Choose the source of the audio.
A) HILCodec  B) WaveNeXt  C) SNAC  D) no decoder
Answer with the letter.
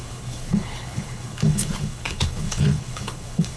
A